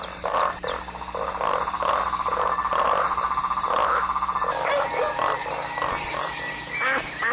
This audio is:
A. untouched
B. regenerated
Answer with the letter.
A